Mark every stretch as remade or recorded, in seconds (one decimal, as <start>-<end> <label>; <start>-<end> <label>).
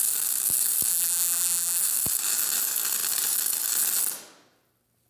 0.0-0.9 recorded; 0.9-1.8 remade; 1.8-5.1 recorded